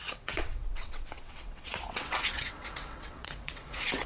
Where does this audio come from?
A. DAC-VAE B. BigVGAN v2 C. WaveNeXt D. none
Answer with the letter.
C